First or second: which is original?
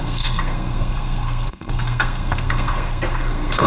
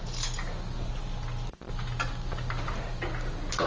second